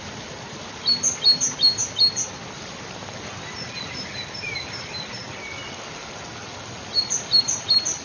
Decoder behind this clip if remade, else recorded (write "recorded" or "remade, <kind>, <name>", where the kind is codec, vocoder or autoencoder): recorded